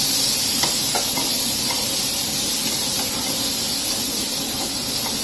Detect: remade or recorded recorded